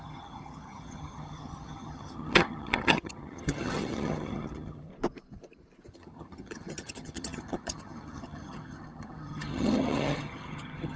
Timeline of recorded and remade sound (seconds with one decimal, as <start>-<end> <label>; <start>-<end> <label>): 0.0-4.9 remade; 4.9-5.9 recorded; 5.9-11.0 remade